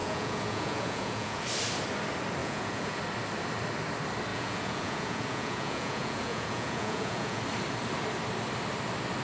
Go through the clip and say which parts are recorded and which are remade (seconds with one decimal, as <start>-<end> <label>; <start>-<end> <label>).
0.0-1.4 remade; 1.4-2.4 recorded; 2.4-3.0 remade; 3.0-4.3 recorded; 4.3-7.4 remade; 7.4-9.2 recorded